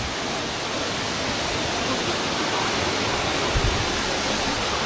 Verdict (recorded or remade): recorded